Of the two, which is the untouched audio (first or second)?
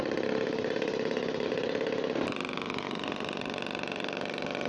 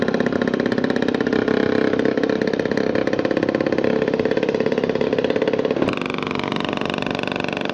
second